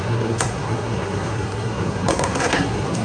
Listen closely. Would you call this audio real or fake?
fake